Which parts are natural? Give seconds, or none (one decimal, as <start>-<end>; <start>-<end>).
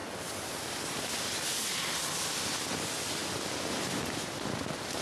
0.0-5.0